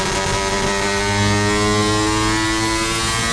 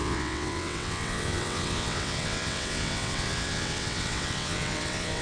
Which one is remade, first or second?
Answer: second